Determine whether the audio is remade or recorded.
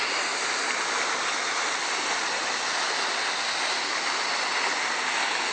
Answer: recorded